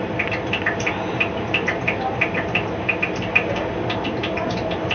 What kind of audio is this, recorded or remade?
recorded